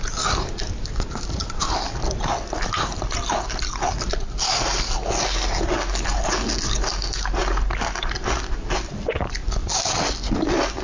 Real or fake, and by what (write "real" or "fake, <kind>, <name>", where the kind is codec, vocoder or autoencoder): real